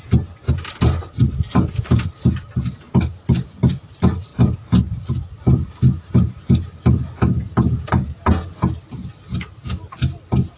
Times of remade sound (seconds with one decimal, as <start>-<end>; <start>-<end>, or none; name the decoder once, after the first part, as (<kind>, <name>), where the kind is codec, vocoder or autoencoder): none